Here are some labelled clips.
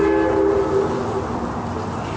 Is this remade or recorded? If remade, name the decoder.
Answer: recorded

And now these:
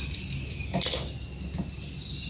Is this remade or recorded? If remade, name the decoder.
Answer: recorded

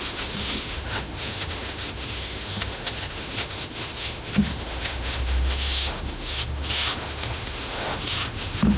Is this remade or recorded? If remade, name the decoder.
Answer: remade, autoencoder, DAC-VAE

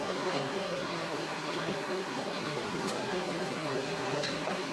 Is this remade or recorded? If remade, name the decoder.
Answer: remade, codec, SNAC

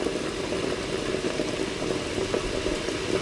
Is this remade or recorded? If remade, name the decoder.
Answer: recorded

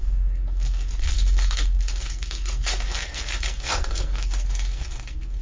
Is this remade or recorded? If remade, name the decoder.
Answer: remade, codec, SNAC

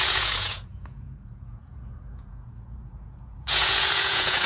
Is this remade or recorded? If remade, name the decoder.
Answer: remade, vocoder, Vocos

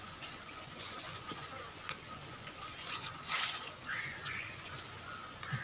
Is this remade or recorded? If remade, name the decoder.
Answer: remade, vocoder, Vocos